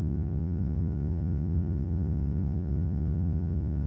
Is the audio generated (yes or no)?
yes